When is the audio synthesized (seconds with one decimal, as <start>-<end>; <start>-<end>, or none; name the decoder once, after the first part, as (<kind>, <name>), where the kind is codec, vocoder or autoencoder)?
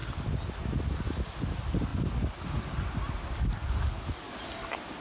none